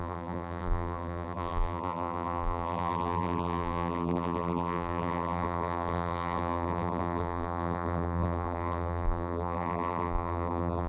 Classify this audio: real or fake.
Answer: fake